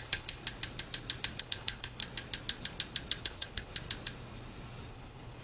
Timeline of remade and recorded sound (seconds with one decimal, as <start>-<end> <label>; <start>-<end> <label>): 0.0-0.4 remade; 0.4-1.4 recorded; 1.4-2.0 remade; 2.0-3.2 recorded; 3.2-3.7 remade; 3.7-4.9 recorded; 4.9-5.4 remade